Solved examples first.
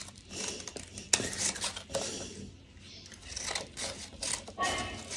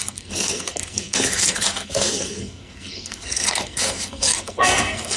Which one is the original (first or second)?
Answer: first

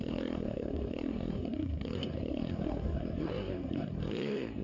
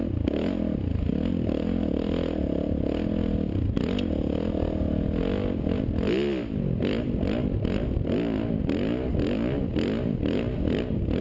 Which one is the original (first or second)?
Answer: second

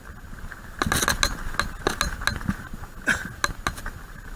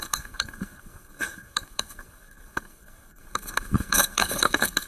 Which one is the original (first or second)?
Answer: first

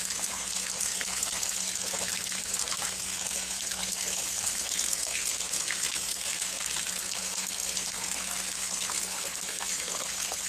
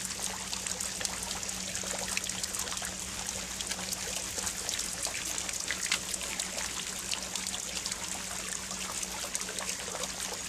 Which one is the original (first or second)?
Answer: second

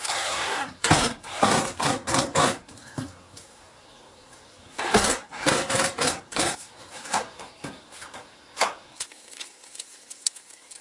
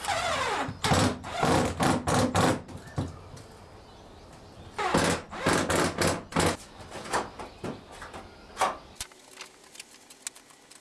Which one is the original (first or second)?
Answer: second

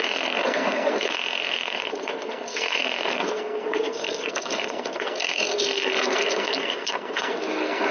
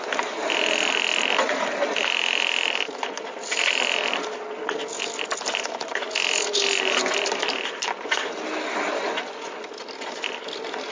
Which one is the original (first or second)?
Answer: second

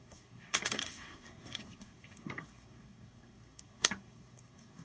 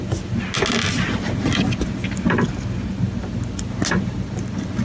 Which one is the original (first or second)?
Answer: second